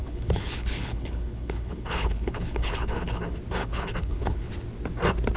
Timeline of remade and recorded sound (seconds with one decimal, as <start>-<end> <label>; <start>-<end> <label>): 0.0-3.2 remade; 3.2-3.6 recorded; 3.6-4.5 remade; 4.5-5.4 recorded